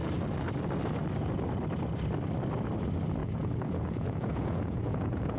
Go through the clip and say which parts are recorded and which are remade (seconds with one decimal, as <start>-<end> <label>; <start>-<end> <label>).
0.0-3.2 recorded; 3.2-5.4 remade